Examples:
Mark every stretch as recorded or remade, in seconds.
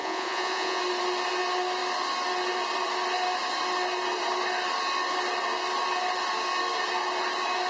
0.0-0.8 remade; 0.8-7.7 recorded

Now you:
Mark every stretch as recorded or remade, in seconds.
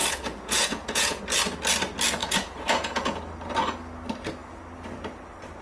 0.0-1.2 remade; 1.2-2.2 recorded; 2.2-3.2 remade; 3.2-5.6 recorded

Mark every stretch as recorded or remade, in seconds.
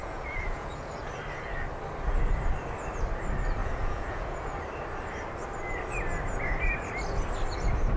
0.0-0.9 remade; 0.9-3.6 recorded; 3.6-4.5 remade; 4.5-8.0 recorded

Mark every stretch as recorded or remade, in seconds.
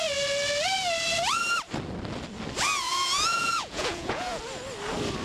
0.0-2.9 recorded; 2.9-4.4 remade; 4.4-5.2 recorded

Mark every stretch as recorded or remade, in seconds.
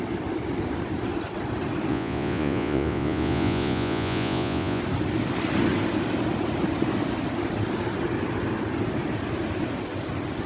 0.0-1.9 recorded; 1.9-4.8 remade; 4.8-10.5 recorded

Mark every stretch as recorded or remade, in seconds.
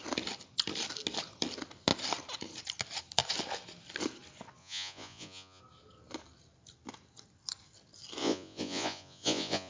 0.0-4.6 recorded; 4.6-5.6 remade; 5.6-8.2 recorded; 8.2-9.7 remade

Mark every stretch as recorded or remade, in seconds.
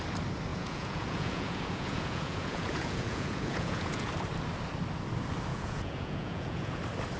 0.0-0.5 recorded; 0.5-4.1 remade; 4.1-5.5 recorded; 5.5-6.8 remade; 6.8-7.2 recorded